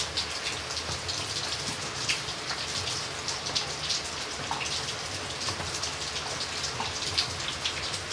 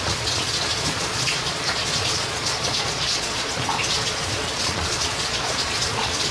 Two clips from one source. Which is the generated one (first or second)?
second